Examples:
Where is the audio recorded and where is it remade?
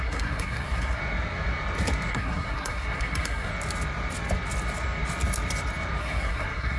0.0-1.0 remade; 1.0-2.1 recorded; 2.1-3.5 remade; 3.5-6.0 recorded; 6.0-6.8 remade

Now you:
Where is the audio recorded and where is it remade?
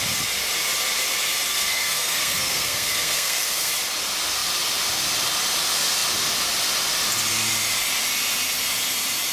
0.0-1.5 recorded; 1.5-3.7 remade; 3.7-9.3 recorded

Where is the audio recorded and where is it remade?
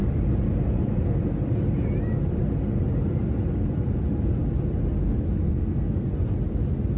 0.0-5.4 recorded; 5.4-6.1 remade; 6.1-7.0 recorded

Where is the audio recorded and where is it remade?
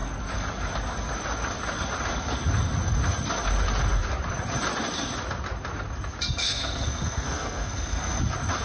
0.0-6.4 recorded; 6.4-8.2 remade; 8.2-8.6 recorded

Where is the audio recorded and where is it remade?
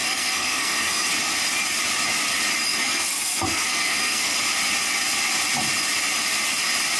0.0-1.1 remade; 1.1-2.7 recorded; 2.7-4.4 remade; 4.4-7.0 recorded